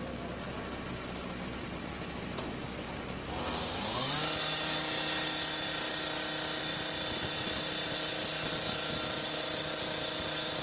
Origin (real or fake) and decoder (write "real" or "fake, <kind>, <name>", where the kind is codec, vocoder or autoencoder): real